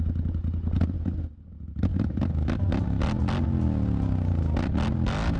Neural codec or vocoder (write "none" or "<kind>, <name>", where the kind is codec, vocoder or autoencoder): none